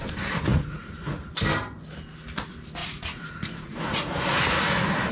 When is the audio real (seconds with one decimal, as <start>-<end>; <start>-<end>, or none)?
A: 0.0-0.5; 1.2-2.8; 4.4-5.1